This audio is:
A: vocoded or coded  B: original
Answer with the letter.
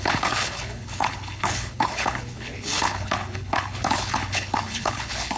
A